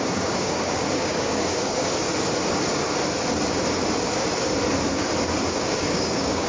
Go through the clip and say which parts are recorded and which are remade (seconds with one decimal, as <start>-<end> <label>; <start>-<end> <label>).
0.0-2.1 remade; 2.1-5.6 recorded; 5.6-6.5 remade